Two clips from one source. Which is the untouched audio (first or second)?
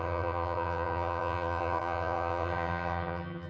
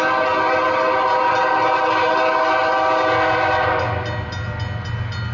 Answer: second